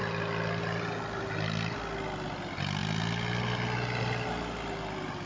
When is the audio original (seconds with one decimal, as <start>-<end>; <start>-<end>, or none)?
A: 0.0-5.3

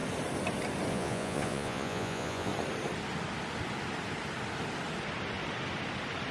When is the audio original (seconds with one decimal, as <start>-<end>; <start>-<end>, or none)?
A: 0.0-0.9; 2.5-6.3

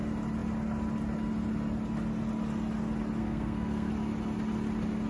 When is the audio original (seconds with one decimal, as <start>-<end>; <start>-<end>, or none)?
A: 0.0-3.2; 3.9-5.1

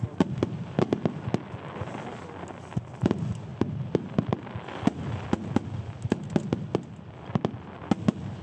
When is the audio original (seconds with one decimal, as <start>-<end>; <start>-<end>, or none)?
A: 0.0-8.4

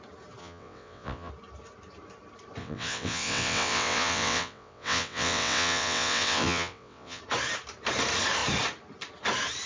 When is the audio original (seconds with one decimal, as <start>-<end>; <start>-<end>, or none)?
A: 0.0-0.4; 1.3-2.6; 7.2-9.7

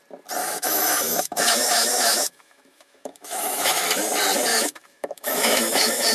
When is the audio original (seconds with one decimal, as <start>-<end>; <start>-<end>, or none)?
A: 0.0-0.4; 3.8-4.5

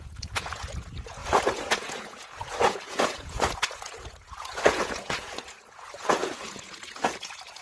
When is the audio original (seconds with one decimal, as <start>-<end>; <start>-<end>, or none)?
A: none